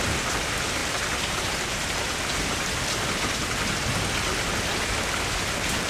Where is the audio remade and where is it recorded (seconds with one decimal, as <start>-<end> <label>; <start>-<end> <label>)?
0.0-5.9 recorded